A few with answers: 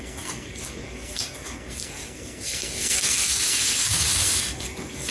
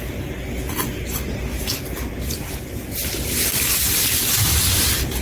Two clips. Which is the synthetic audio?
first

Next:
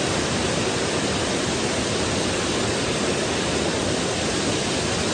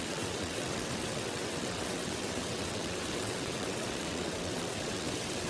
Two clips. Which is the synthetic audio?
second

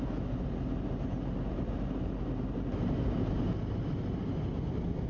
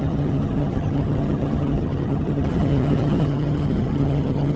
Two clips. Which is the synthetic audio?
second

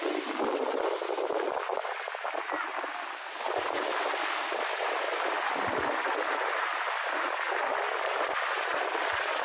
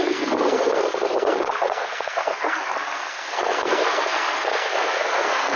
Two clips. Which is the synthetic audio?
second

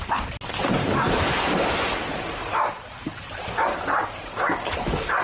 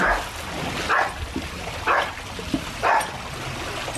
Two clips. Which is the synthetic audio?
first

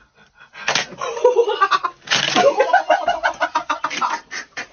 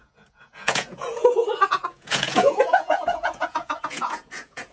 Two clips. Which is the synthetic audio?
second